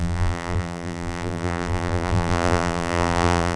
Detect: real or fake fake